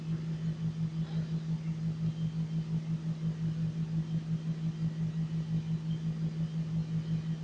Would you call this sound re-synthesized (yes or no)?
no